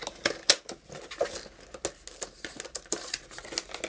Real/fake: real